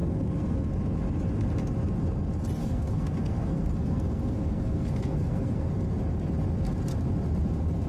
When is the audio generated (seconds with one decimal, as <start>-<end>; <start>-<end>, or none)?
0.0-0.7; 2.6-5.7